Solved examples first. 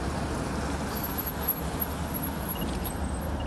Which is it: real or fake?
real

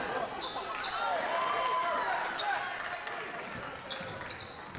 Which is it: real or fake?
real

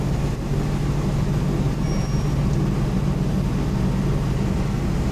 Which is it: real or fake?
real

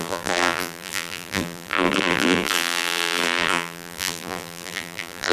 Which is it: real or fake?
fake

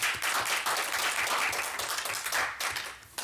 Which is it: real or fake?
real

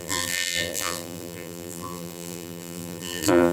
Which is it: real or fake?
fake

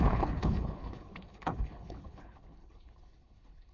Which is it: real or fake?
fake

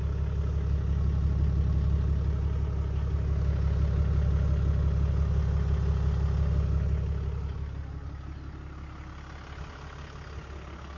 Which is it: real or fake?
real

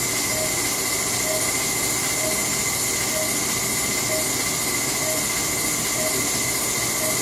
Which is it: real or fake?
real